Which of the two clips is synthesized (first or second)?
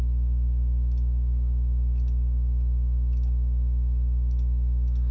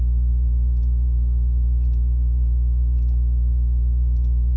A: second